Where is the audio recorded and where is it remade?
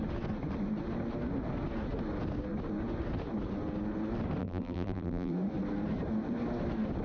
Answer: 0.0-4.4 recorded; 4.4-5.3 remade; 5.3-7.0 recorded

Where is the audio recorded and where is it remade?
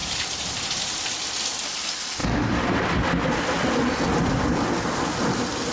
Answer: 0.0-1.1 remade; 1.1-5.7 recorded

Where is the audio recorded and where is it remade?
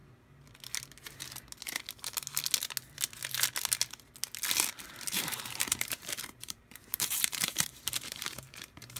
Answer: 0.0-5.1 recorded; 5.1-9.0 remade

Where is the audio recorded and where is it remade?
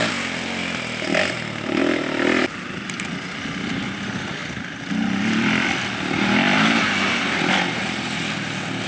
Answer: 0.0-8.9 recorded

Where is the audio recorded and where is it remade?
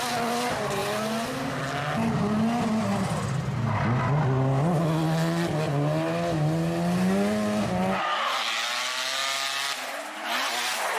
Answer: 0.0-11.0 recorded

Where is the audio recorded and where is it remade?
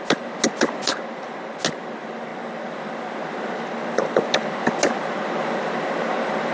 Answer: 0.0-6.5 recorded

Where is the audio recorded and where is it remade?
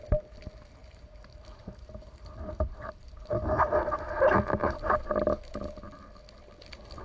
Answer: 0.0-0.8 recorded; 0.8-3.3 remade; 3.3-4.6 recorded; 4.6-5.3 remade; 5.3-7.0 recorded